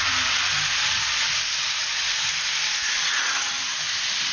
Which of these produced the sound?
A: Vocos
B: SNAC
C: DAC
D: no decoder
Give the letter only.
D